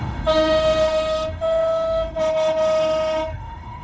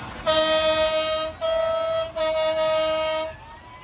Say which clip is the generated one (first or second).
first